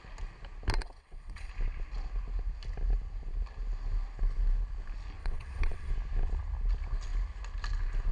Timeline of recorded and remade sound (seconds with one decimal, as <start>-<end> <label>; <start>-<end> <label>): 0.0-0.8 recorded; 0.8-1.5 remade; 1.5-5.2 recorded; 5.2-5.9 remade; 5.9-8.1 recorded